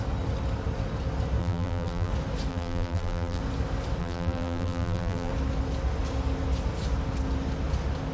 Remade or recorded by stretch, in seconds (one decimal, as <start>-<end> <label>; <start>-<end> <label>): 0.0-1.4 recorded; 1.4-2.1 remade; 2.1-2.5 recorded; 2.5-3.4 remade; 3.4-4.0 recorded; 4.0-5.3 remade; 5.3-8.1 recorded